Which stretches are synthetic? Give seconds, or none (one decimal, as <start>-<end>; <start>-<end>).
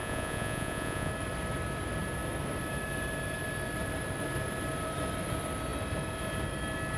0.0-1.1